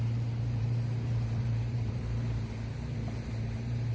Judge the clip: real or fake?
fake